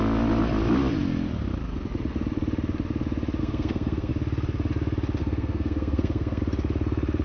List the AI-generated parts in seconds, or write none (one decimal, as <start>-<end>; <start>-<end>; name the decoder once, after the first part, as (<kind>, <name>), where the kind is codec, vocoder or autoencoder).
3.4-4.1 (codec, SNAC); 5.2-6.4

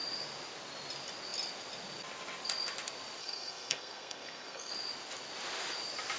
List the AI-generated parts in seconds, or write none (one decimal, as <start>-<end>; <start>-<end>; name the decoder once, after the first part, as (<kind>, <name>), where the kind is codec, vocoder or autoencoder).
3.2-4.7 (codec, SNAC)